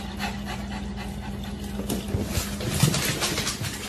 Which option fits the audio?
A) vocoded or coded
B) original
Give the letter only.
B